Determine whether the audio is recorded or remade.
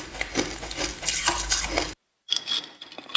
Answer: recorded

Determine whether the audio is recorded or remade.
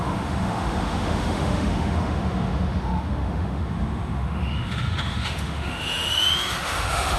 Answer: remade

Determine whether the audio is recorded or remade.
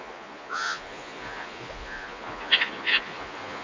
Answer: remade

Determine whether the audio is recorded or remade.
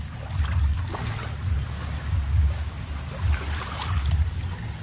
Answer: recorded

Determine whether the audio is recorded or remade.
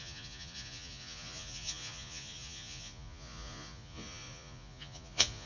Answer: remade